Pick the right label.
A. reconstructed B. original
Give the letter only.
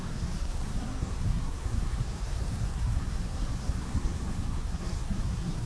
A